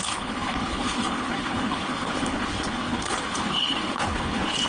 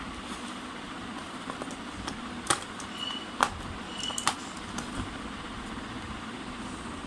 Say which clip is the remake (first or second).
first